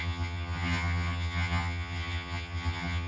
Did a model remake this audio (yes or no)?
yes